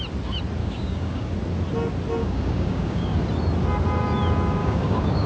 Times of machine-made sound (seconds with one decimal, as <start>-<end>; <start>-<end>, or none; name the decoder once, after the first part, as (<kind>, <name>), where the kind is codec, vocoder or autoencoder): 0.6-1.3 (codec, DAC); 2.2-3.2; 4.6-5.3